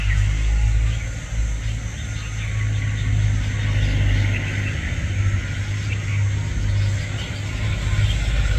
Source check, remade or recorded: recorded